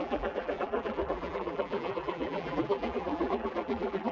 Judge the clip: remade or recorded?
remade